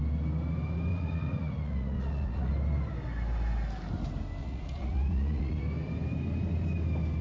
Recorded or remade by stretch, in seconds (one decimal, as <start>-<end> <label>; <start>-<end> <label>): 0.0-0.9 recorded; 0.9-2.5 remade; 2.5-4.4 recorded; 4.4-5.6 remade; 5.6-7.2 recorded